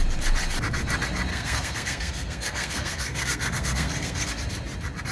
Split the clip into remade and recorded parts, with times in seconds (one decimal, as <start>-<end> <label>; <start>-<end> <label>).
0.0-1.3 recorded; 1.3-4.3 remade; 4.3-5.1 recorded